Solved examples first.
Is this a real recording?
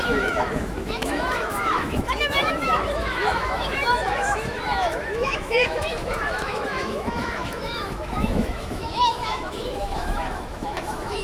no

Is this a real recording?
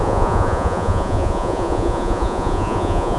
no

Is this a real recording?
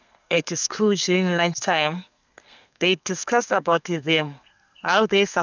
no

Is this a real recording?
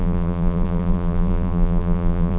no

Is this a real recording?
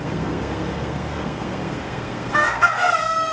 no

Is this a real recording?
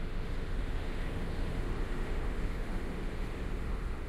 no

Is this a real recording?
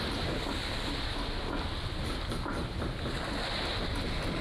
yes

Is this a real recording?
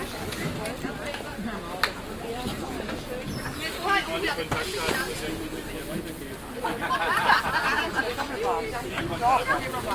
yes